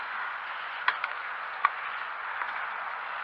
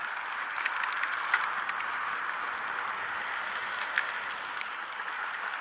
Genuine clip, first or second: second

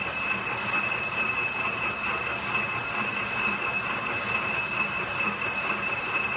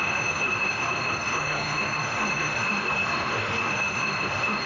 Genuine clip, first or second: first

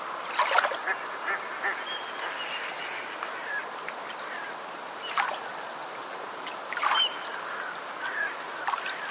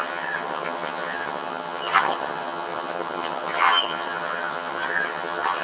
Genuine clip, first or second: first